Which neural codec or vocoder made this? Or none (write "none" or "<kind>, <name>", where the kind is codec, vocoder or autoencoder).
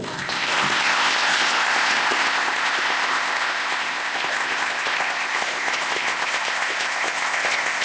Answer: codec, ZipCodec